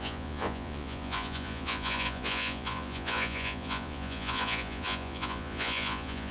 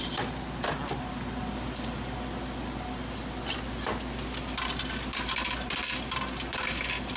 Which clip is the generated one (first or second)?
first